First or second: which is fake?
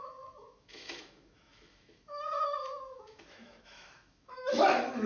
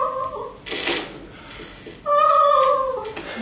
first